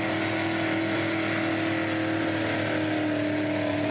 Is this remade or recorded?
recorded